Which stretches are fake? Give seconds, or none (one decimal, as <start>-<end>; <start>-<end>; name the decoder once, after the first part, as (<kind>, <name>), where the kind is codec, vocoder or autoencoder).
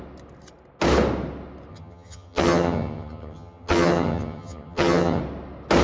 1.7-5.2 (vocoder, HiFi-GAN)